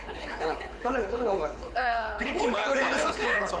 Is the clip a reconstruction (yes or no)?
yes